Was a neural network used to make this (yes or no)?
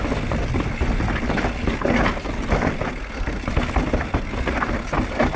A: no